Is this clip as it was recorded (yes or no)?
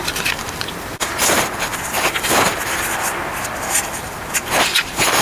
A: no